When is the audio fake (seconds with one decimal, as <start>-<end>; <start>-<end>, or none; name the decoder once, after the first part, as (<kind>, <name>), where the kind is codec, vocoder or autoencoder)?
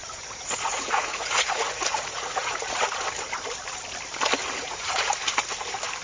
0.0-2.8 (vocoder, Vocos); 4.4-5.1